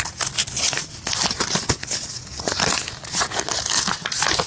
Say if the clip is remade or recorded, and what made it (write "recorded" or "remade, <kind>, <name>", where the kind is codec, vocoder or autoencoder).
recorded